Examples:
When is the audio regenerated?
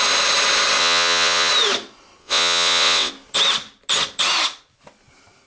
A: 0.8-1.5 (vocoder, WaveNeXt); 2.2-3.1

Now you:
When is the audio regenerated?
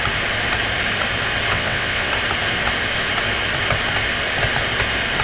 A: 1.5-2.1 (vocoder, WaveNeXt)